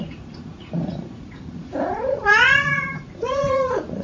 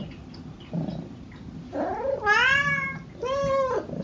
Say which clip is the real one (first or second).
second